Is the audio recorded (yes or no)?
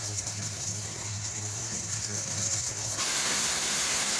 no